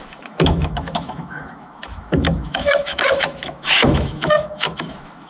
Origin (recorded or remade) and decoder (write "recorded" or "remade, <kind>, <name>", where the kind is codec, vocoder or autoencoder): remade, autoencoder, DAC-VAE